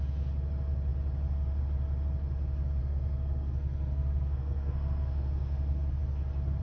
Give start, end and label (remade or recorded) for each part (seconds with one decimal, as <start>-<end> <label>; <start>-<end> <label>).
0.0-2.8 recorded; 2.8-6.0 remade; 6.0-6.6 recorded